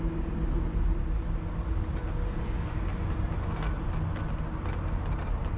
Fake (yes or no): no